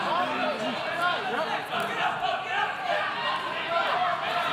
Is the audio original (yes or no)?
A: yes